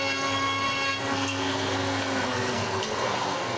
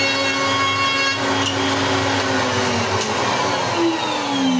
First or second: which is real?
second